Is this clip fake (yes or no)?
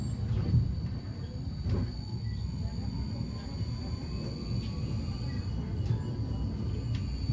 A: no